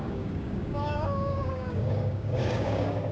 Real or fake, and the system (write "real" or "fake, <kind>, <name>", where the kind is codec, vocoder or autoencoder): fake, codec, DAC